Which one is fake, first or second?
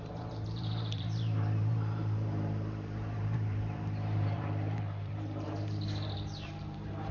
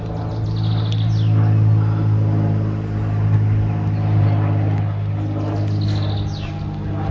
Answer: first